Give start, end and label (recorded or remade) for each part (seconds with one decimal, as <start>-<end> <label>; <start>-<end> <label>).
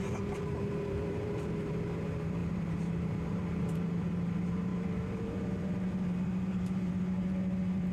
0.0-7.9 remade